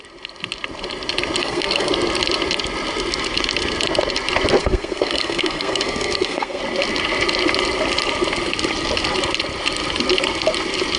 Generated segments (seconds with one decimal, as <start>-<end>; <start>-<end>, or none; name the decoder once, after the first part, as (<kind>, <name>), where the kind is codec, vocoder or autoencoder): 1.4-1.9 (codec, SNAC); 4.6-6.6